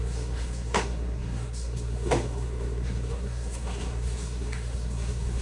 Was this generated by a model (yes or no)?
yes